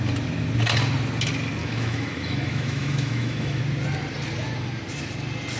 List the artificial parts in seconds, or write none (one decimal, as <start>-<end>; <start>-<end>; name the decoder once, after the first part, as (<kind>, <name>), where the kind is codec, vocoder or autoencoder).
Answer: 1.6-3.6 (autoencoder, DAC-VAE)